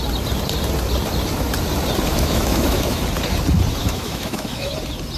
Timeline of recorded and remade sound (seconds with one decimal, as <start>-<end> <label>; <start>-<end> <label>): 0.0-2.1 recorded; 2.1-3.0 remade; 3.0-3.8 recorded; 3.8-4.7 remade; 4.7-5.2 recorded